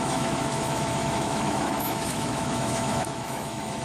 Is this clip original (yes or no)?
no